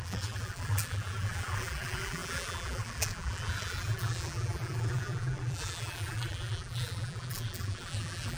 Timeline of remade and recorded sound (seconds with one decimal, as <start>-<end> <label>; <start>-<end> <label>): 0.0-8.4 remade